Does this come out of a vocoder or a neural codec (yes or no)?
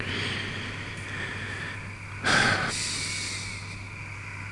no